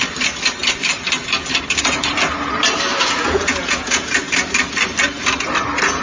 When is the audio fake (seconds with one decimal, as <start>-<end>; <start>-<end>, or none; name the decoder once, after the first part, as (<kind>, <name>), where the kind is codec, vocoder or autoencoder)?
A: 2.9-4.1 (vocoder, Vocos)